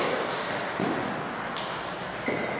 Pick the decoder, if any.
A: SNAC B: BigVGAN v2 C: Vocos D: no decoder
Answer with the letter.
D